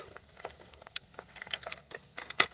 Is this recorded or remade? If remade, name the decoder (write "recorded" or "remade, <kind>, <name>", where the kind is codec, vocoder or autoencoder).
remade, codec, SNAC